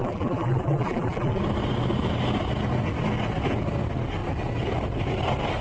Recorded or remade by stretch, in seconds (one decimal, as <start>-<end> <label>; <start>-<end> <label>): 0.0-1.4 remade; 1.4-5.6 recorded